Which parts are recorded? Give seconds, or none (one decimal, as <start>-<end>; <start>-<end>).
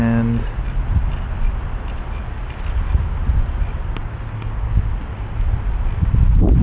0.0-6.6